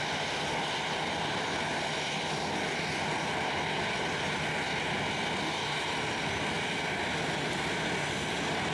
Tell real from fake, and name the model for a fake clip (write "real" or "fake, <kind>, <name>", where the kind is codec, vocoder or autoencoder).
real